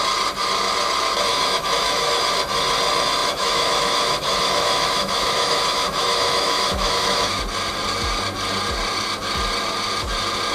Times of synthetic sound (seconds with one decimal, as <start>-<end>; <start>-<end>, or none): 1.3-2.3; 3.2-7.4